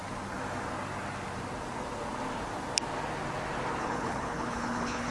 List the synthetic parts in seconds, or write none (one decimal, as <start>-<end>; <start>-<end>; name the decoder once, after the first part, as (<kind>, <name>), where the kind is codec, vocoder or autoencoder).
3.8-5.1 (codec, HILCodec)